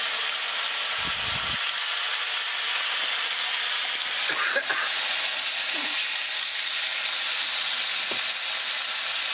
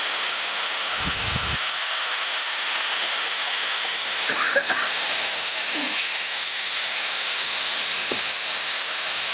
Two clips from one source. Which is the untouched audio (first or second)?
first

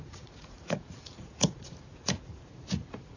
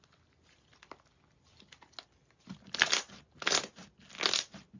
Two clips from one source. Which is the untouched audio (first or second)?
second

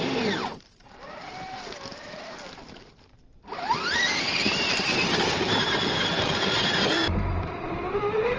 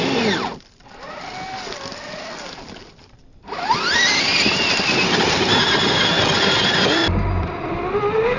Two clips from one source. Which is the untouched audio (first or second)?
second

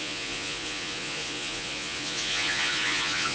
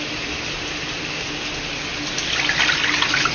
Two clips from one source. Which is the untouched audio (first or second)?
second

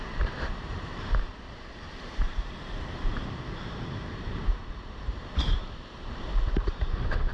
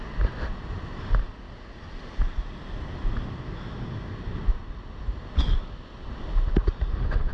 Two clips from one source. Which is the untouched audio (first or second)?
second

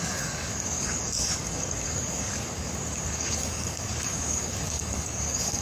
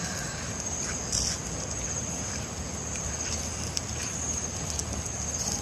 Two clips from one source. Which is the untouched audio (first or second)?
second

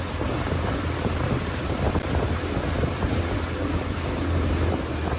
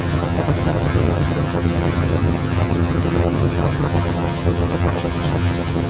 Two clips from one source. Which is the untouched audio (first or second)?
first